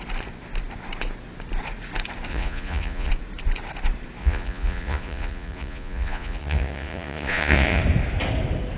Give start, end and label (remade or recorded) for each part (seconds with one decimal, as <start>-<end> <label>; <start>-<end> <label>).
0.0-2.3 recorded; 2.3-3.1 remade; 3.1-4.2 recorded; 4.2-7.8 remade; 7.8-8.8 recorded